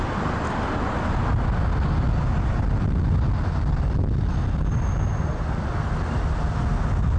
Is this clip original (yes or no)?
yes